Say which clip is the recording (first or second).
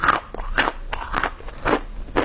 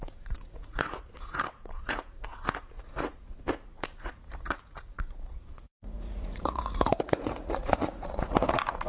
first